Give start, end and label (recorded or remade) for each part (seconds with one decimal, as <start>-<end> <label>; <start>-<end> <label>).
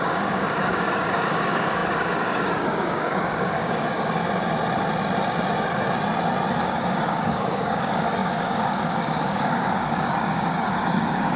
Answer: 0.0-4.2 remade; 4.2-6.5 recorded; 6.5-11.4 remade